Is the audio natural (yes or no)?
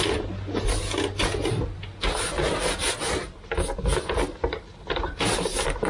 yes